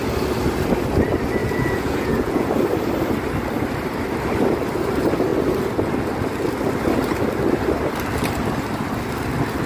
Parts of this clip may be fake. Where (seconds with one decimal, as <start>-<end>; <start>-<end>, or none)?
1.4-2.5